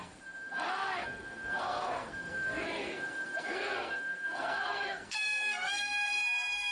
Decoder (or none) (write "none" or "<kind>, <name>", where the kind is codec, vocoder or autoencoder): codec, SNAC